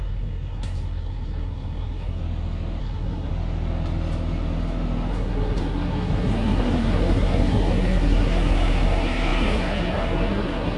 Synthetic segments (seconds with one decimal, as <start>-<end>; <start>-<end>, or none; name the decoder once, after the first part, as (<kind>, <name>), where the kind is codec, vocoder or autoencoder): 0.0-2.2 (codec, SNAC); 2.8-3.3; 5.1-10.8